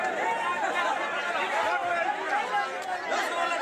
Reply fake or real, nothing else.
real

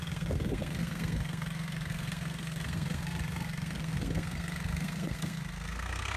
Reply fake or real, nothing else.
fake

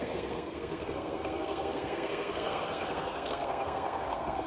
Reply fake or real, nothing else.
fake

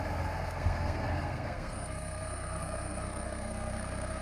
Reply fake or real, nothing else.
fake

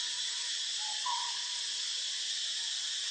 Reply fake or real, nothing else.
real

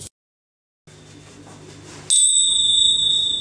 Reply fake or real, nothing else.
real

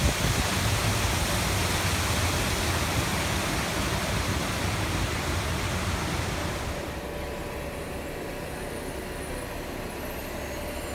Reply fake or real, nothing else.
real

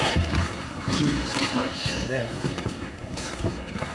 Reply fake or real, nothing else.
fake